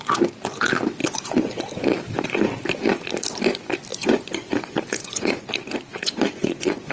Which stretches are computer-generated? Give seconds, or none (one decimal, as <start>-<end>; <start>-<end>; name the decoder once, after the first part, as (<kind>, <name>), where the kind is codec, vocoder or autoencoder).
1.0-1.6 (vocoder, Vocos); 3.9-5.5; 5.9-6.9